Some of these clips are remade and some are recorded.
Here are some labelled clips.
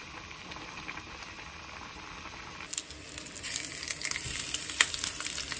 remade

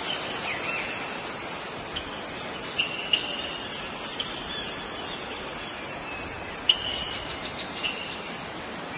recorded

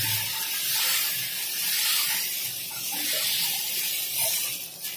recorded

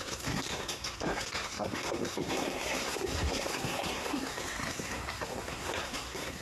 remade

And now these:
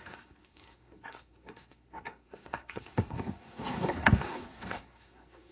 remade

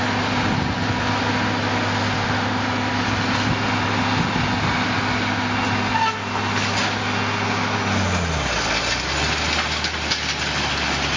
recorded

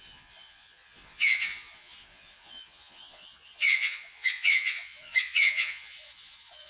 remade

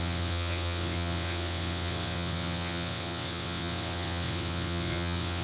remade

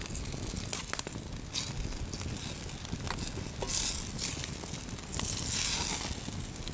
recorded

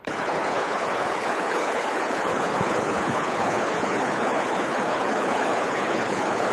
remade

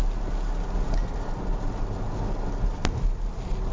recorded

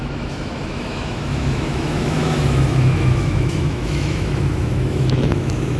remade